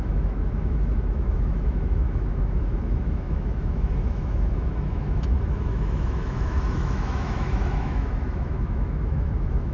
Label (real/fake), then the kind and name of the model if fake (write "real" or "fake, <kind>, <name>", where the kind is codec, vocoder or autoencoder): fake, autoencoder, DAC-VAE